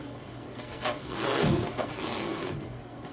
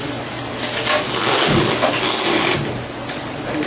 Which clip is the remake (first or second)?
first